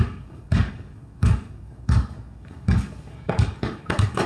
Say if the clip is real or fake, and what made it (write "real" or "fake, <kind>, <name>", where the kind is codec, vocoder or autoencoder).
fake, codec, DAC